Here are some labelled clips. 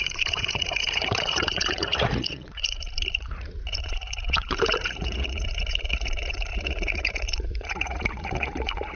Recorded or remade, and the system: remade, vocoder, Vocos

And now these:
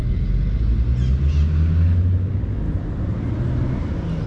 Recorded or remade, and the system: recorded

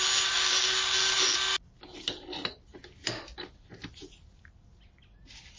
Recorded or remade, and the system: recorded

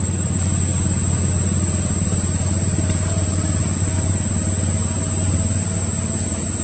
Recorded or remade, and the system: recorded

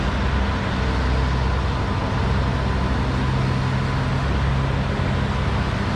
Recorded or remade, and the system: recorded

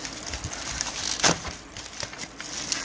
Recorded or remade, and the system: recorded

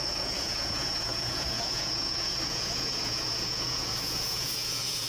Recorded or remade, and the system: remade, vocoder, Vocos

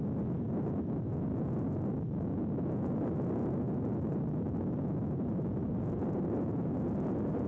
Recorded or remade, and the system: recorded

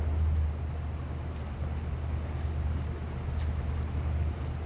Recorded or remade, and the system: recorded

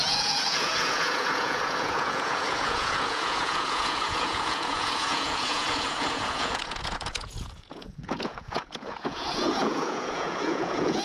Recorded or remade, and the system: remade, vocoder, Vocos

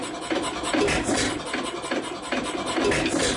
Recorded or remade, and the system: recorded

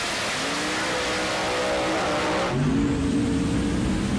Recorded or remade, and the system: recorded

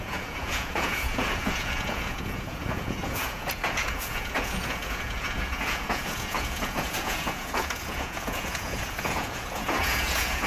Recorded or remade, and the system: remade, vocoder, Vocos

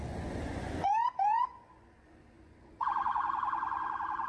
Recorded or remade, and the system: remade, vocoder, Vocos